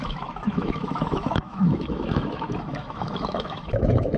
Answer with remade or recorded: remade